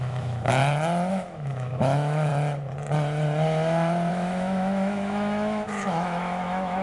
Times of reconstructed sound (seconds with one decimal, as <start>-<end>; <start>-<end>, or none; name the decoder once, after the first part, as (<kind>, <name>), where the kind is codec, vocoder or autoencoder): 0.0-0.6 (autoencoder, DAC-VAE); 1.1-2.3; 4.1-6.8